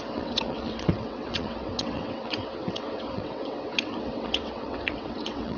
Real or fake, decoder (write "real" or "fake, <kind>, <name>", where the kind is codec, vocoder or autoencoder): fake, vocoder, WaveNeXt